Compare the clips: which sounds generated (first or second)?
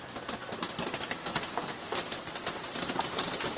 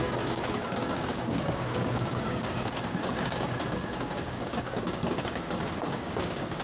second